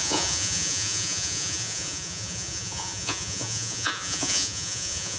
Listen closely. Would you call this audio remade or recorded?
remade